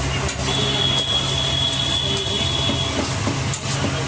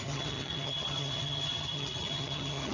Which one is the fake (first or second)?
second